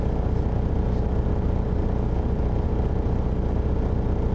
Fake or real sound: real